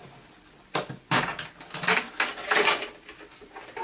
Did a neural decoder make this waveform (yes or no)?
no